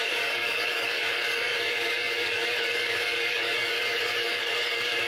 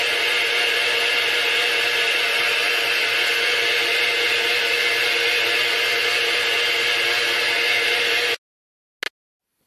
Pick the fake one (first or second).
first